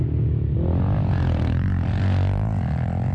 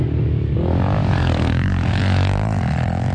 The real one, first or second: first